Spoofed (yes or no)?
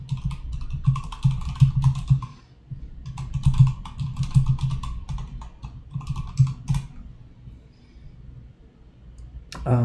no